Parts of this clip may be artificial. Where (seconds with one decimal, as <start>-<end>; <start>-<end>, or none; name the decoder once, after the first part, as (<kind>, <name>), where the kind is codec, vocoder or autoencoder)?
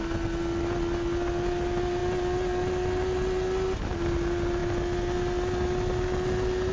none